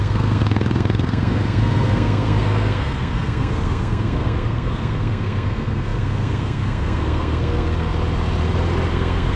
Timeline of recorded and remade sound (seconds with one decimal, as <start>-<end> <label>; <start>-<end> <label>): 0.0-7.9 remade; 7.9-8.9 recorded; 8.9-9.4 remade